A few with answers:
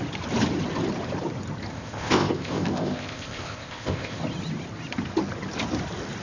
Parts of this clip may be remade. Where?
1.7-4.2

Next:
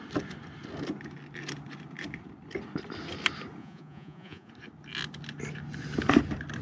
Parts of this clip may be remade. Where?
3.6-4.5

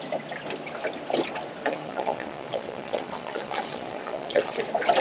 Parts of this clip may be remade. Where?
1.6-4.6

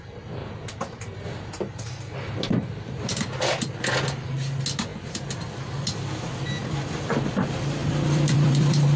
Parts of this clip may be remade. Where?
0.4-2.4; 4.9-5.6; 6.6-7.2; 7.8-9.0

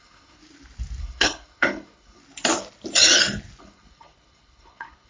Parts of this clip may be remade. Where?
0.0-0.4; 1.0-2.2; 3.6-5.1